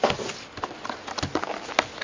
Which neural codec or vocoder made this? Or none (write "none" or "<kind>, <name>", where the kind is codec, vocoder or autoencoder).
none